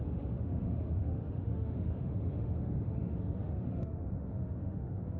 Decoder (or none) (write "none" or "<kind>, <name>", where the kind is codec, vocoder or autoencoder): autoencoder, DAC-VAE